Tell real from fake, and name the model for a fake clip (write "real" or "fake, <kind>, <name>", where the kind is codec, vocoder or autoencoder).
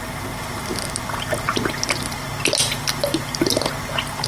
real